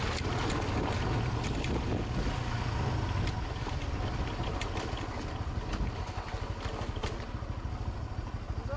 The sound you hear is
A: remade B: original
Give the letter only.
B